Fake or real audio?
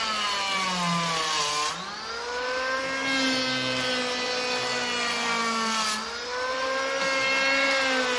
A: real